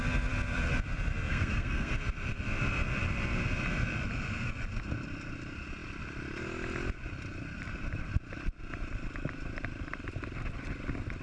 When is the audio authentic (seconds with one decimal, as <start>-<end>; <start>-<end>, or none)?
0.0-1.3; 2.0-11.2